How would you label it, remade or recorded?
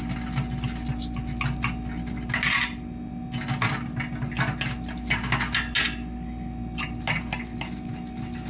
recorded